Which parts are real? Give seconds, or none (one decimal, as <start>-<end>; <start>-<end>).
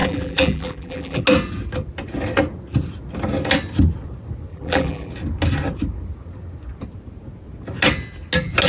1.2-4.5; 5.1-8.7